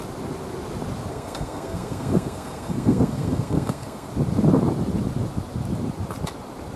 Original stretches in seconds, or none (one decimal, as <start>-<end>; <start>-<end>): 0.0-1.1; 4.1-6.8